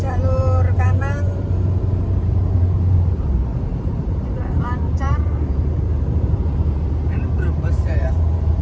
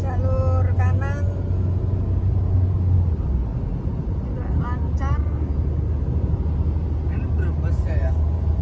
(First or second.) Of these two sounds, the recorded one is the second